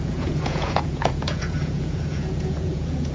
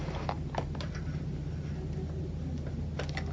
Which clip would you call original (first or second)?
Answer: second